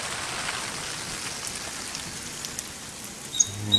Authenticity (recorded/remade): recorded